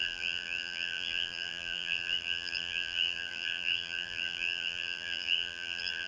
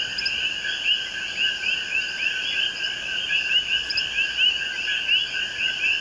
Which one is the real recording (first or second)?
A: second